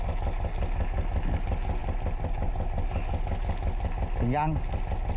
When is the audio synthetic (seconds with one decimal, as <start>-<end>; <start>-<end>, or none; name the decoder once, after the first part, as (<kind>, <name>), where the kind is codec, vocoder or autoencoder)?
none